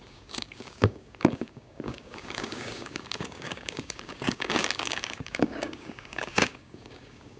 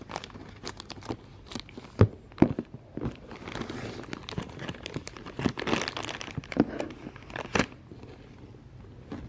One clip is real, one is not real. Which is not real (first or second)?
first